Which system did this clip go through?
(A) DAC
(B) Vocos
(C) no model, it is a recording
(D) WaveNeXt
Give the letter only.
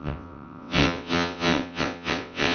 D